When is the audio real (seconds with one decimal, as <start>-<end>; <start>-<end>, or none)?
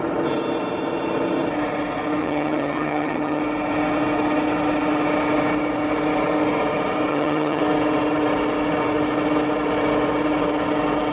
0.0-2.2; 3.4-7.1; 7.6-11.1